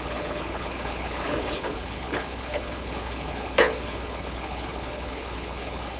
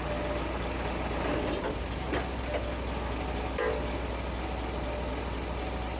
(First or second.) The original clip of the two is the second